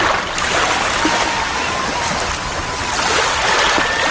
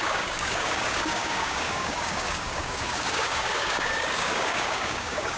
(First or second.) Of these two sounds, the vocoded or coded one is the second